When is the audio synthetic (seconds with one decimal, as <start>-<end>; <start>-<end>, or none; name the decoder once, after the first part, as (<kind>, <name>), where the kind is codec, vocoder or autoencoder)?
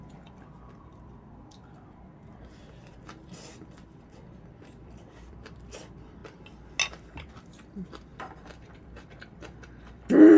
0.0-6.2 (vocoder, BigVGAN v2); 7.0-10.4